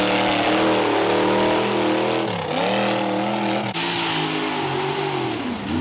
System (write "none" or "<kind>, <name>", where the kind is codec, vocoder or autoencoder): none